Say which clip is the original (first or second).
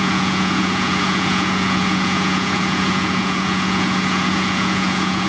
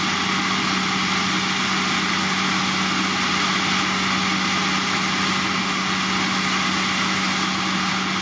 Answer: second